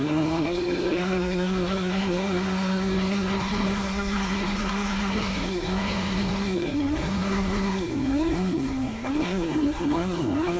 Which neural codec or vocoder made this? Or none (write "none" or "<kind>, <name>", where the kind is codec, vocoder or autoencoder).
codec, SNAC